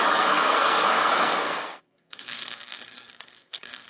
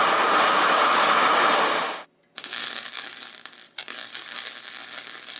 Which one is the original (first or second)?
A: second